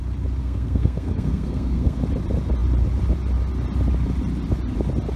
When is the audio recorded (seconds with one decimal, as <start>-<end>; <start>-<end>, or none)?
0.0-0.4; 2.0-5.2